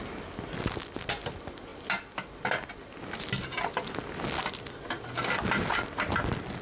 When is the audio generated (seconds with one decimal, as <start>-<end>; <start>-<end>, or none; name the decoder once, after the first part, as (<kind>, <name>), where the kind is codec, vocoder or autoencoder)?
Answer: none